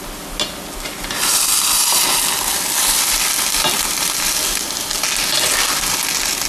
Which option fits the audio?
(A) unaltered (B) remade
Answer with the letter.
A